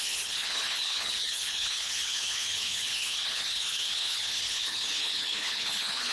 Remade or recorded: remade